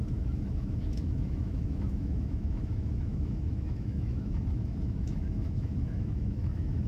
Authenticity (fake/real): fake